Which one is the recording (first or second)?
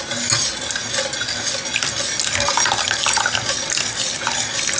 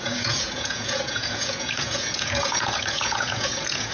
first